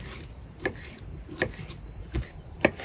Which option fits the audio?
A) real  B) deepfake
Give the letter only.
B